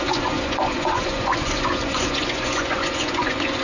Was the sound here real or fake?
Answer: fake